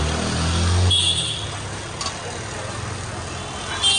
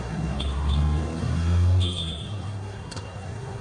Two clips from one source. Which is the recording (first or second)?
first